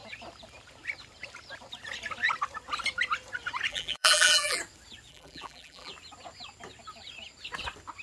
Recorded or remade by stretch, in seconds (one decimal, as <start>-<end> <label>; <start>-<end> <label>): 0.0-3.7 recorded; 3.7-4.6 remade; 4.6-5.1 recorded; 5.1-5.9 remade; 5.9-8.0 recorded